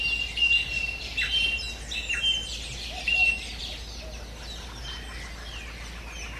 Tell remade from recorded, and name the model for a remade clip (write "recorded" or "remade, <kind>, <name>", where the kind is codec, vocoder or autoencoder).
recorded